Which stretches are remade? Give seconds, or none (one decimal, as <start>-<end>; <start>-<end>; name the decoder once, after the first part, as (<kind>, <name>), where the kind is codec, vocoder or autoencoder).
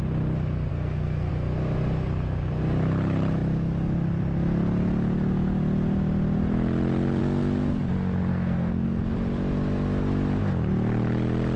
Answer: 0.7-1.3 (codec, SNAC); 8.3-9.0